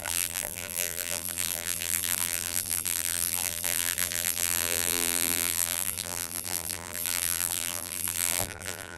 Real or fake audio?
fake